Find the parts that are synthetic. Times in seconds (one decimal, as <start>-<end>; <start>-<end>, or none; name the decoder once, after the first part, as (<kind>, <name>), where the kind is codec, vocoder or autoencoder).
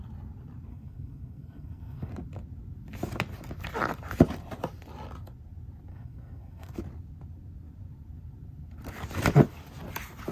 0.7-2.1 (codec, SNAC); 5.9-6.8